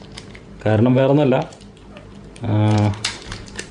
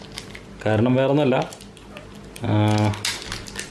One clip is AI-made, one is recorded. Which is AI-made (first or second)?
first